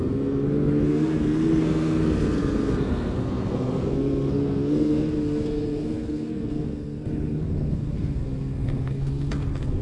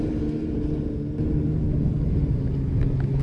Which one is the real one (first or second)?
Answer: second